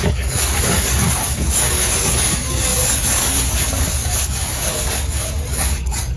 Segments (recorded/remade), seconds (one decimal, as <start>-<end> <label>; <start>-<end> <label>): 0.0-6.2 remade